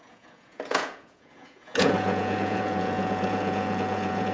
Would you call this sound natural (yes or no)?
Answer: no